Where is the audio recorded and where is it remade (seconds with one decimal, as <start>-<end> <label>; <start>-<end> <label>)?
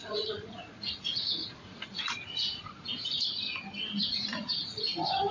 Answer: 0.0-2.6 remade; 2.6-4.1 recorded; 4.1-4.8 remade; 4.8-5.3 recorded